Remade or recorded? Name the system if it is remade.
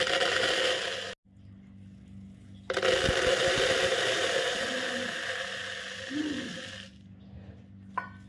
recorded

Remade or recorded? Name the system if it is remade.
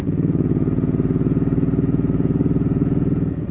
remade, vocoder, Vocos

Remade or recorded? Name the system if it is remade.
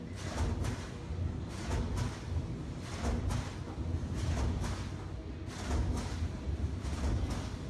recorded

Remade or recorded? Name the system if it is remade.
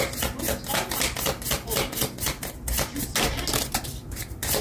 recorded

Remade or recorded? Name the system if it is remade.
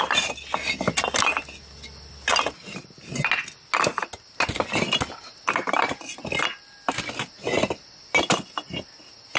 recorded